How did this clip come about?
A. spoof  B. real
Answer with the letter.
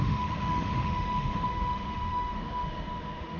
A